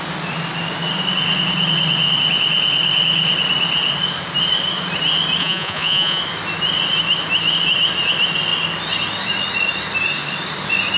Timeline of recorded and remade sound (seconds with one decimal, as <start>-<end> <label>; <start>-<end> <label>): 0.0-5.4 recorded; 5.4-6.2 remade; 6.2-11.0 recorded